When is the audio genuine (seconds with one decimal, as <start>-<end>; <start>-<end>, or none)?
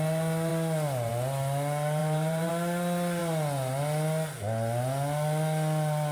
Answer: 0.0-2.0; 2.5-6.1